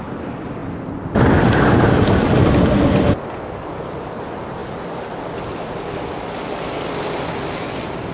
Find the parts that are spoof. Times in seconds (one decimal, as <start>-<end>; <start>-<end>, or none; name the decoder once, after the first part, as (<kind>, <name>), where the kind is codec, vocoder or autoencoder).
none